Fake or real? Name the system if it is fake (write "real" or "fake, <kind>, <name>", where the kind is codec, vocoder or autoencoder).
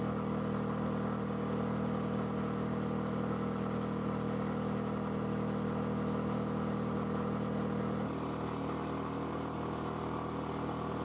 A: real